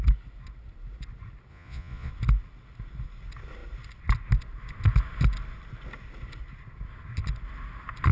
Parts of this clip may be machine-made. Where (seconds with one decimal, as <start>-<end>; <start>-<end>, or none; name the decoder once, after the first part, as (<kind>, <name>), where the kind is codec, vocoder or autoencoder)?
1.5-2.1 (vocoder, Vocos)